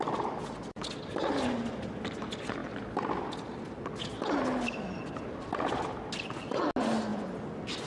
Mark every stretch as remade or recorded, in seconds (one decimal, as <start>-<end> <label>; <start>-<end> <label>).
0.0-7.9 recorded